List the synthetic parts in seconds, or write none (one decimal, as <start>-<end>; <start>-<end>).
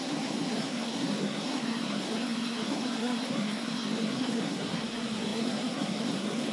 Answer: 0.0-6.5